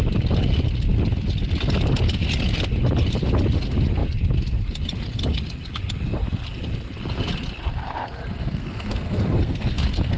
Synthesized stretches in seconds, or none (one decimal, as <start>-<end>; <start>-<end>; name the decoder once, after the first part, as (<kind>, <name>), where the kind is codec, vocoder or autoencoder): 8.4-10.2 (codec, SNAC)

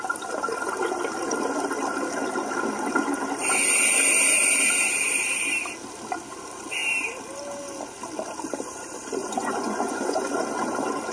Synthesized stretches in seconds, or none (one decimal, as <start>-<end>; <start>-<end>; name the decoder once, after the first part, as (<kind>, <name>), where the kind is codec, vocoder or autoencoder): 9.2-10.4 (vocoder, Vocos)

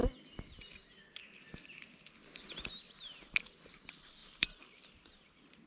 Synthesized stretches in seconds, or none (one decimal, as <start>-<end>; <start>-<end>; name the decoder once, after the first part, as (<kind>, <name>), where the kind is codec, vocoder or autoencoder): 4.2-5.0 (vocoder, BigVGAN v2)

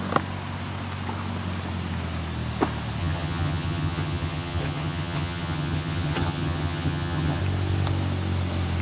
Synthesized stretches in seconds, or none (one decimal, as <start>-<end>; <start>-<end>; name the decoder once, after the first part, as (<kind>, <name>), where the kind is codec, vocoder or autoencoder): 3.0-7.4 (vocoder, HiFi-GAN)

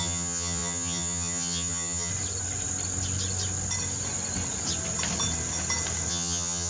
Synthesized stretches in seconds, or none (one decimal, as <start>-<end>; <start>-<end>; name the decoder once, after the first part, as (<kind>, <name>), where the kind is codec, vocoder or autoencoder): 0.0-2.1 (vocoder, HiFi-GAN); 6.1-6.7

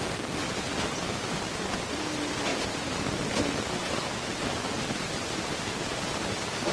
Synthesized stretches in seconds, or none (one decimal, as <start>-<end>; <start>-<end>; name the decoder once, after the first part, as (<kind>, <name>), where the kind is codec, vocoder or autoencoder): none

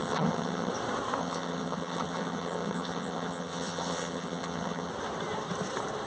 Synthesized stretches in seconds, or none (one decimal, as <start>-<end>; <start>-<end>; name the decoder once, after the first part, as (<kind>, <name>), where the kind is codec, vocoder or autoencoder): 0.0-0.7 (vocoder, HiFi-GAN); 1.2-4.9

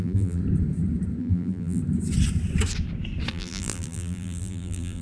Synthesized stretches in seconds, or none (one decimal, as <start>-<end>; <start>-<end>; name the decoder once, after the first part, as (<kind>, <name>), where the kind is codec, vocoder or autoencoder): 0.0-0.4 (vocoder, BigVGAN v2); 1.2-1.8; 3.3-5.0